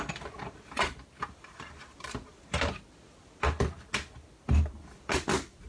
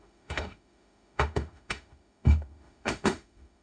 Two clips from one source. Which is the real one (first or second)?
first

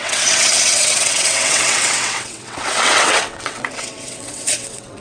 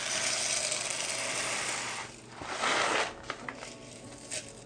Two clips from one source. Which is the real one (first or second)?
second